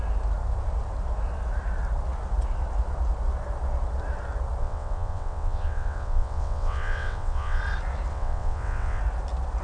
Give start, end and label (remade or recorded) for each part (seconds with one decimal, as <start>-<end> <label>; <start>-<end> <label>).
0.0-4.6 recorded; 4.6-7.6 remade; 7.6-8.1 recorded; 8.1-9.0 remade; 9.0-9.6 recorded